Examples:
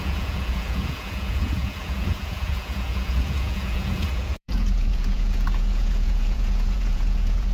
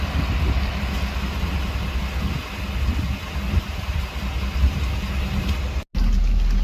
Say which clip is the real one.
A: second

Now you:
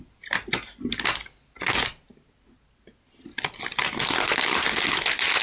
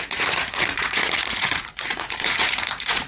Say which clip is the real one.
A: first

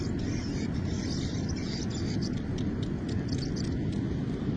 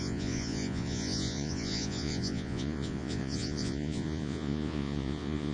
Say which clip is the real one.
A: first